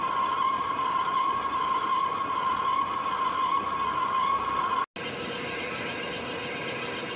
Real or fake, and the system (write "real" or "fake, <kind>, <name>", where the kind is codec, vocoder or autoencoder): real